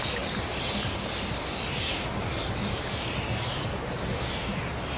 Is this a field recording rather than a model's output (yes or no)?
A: yes